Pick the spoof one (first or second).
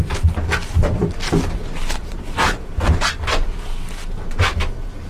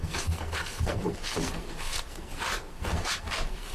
second